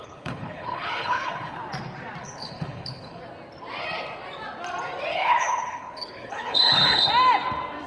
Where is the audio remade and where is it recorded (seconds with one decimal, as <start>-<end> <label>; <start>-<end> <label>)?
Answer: 0.0-1.6 remade; 1.6-2.2 recorded; 2.2-3.2 remade; 3.2-5.1 recorded; 5.1-7.1 remade; 7.1-7.9 recorded